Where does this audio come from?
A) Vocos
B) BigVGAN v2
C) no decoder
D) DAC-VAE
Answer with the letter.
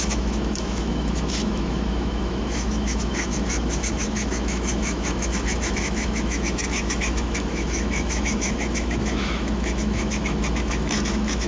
D